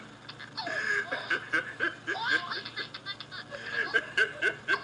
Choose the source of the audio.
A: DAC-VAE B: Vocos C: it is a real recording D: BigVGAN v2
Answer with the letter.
C